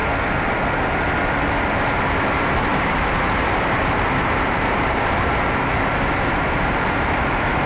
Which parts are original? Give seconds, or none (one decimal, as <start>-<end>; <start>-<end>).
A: 0.0-1.3